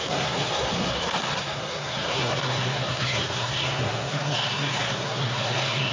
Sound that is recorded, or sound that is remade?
remade